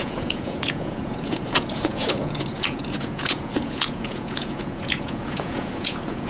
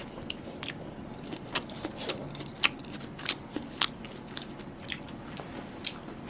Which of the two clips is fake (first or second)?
first